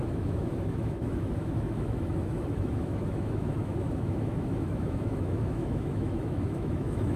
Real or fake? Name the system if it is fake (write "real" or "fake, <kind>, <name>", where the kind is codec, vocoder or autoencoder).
fake, autoencoder, DAC-VAE